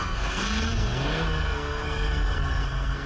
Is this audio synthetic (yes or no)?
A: yes